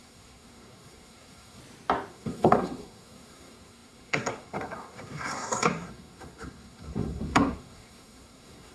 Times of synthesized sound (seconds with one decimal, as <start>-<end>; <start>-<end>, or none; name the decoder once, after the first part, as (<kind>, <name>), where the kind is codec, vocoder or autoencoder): 0.0-1.6 (codec, SNAC); 2.1-8.7